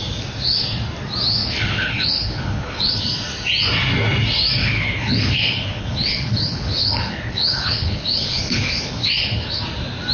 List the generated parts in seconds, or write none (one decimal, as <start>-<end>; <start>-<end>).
1.4-2.9; 4.6-9.6